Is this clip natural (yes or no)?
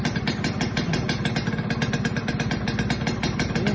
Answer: yes